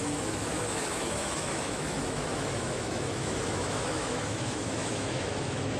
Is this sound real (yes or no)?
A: no